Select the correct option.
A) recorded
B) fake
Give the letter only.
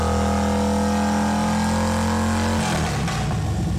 A